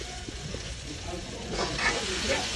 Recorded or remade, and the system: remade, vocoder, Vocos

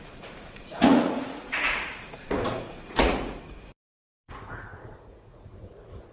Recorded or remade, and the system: remade, vocoder, Vocos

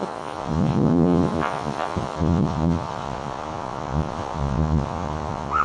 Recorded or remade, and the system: remade, vocoder, Vocos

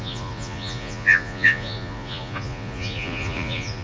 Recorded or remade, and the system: remade, vocoder, Vocos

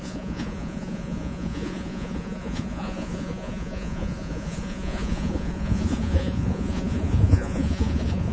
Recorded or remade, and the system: remade, vocoder, Vocos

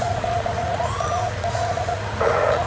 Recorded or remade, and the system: remade, vocoder, Vocos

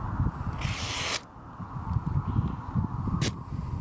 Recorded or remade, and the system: recorded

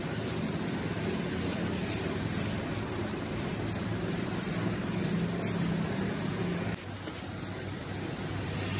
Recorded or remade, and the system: recorded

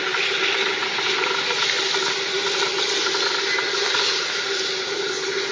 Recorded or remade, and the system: recorded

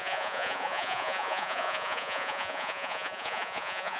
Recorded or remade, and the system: remade, vocoder, Vocos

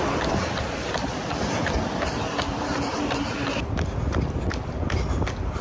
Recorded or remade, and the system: recorded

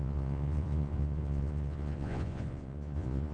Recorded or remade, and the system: remade, vocoder, Vocos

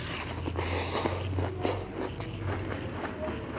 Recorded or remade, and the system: recorded